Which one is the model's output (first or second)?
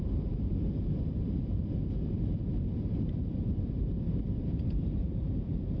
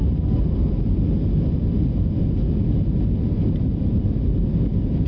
first